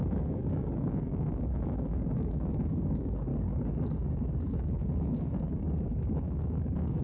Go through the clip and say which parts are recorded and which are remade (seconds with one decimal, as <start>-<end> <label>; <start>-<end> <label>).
0.0-3.3 remade; 3.3-4.4 recorded; 4.4-7.0 remade